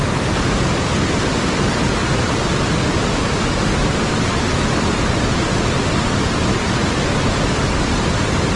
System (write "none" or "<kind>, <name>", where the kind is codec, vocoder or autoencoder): none